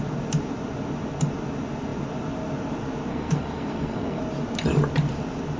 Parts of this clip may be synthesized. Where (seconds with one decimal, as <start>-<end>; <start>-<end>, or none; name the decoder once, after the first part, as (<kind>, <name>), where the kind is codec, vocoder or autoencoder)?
3.1-4.2 (codec, SNAC)